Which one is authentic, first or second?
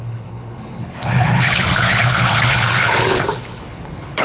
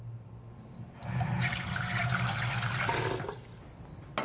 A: second